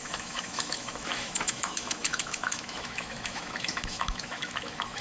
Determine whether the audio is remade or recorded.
remade